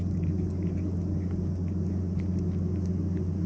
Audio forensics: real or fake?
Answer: real